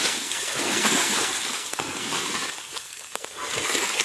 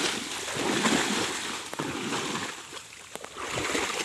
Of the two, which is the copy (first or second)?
first